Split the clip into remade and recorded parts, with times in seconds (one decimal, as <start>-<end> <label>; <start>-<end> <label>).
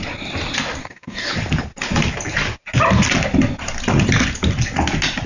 0.0-0.8 recorded; 0.8-1.3 remade; 1.3-5.3 recorded